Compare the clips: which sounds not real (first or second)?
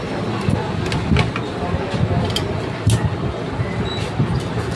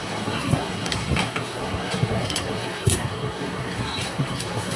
second